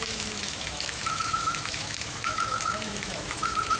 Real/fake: fake